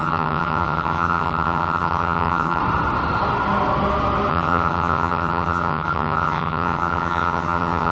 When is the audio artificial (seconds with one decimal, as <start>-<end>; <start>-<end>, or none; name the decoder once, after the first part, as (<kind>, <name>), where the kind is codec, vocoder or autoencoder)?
0.0-2.6 (vocoder, HiFi-GAN); 4.3-7.9